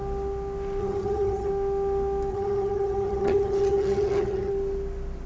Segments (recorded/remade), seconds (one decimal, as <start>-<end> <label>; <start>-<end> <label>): 0.0-0.8 recorded; 0.8-1.5 remade; 1.5-2.3 recorded; 2.3-4.5 remade; 4.5-5.3 recorded